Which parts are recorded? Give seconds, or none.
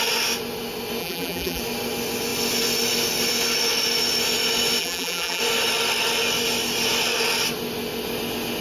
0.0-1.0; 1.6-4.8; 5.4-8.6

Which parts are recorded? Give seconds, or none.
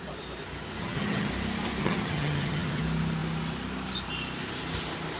0.0-0.8; 1.3-1.8; 2.8-5.2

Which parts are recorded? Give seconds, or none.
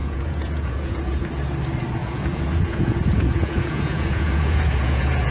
1.3-2.0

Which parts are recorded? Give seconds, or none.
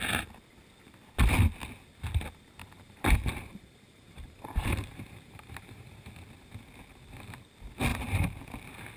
0.0-2.6; 6.1-7.9; 8.4-9.0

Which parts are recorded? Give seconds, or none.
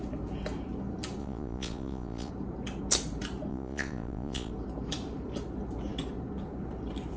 0.0-1.2; 2.3-3.5; 4.5-7.2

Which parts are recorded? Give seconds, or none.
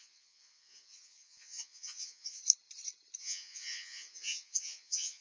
2.4-3.2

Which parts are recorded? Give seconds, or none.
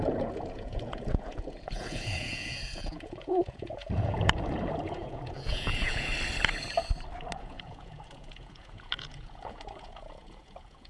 6.1-7.4